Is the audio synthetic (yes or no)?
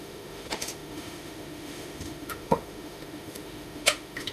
yes